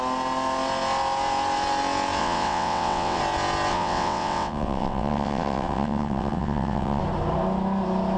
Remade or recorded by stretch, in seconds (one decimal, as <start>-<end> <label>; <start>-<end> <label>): 0.0-2.2 recorded; 2.2-3.2 remade; 3.2-3.7 recorded; 3.7-7.0 remade; 7.0-8.2 recorded